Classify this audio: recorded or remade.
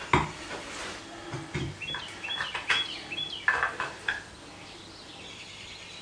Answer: recorded